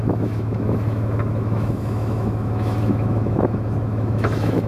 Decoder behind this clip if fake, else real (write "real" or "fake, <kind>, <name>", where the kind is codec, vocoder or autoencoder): fake, autoencoder, DAC-VAE